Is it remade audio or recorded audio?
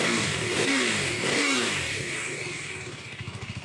remade